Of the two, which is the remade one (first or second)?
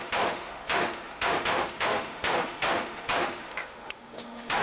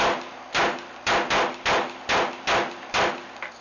first